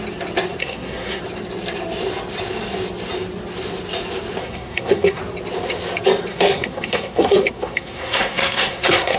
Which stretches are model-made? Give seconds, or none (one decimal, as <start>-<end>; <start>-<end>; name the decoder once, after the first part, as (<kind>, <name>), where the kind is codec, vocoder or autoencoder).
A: 0.6-1.2 (codec, SNAC); 4.4-5.2; 6.3-9.2